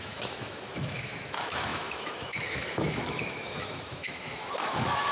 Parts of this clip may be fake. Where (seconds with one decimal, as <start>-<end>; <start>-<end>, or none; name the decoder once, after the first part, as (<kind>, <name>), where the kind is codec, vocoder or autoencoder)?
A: 0.0-5.1 (autoencoder, DAC-VAE)